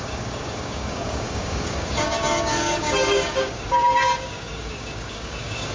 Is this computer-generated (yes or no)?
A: yes